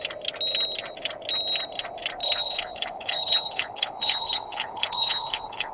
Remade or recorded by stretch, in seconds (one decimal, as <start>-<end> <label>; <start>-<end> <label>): 0.0-2.2 recorded; 2.2-5.7 remade